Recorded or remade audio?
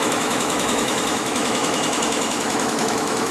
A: remade